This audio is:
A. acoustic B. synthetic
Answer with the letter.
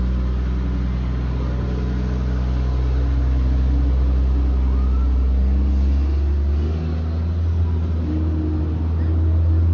A